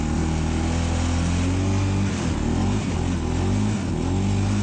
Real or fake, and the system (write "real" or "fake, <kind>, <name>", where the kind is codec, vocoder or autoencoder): real